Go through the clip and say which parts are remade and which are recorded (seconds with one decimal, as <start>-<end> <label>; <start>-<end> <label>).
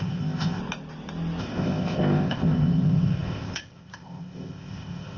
0.0-0.6 remade; 0.6-1.4 recorded; 1.4-5.2 remade